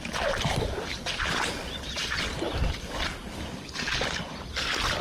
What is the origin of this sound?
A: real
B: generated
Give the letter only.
A